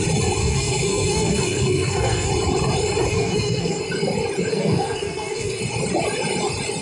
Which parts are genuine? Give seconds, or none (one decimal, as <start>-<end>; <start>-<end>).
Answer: 0.0-0.4; 2.3-3.1; 3.8-4.5; 5.6-6.8